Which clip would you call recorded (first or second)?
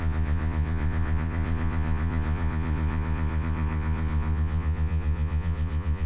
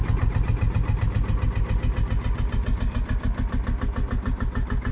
second